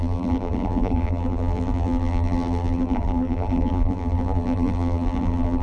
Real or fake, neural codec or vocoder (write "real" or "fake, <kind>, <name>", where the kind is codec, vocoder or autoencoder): fake, vocoder, BigVGAN v2